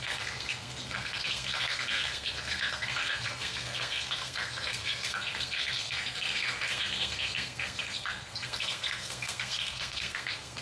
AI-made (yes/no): yes